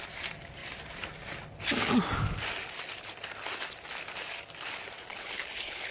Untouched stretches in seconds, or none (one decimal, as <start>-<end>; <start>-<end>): 0.0-5.1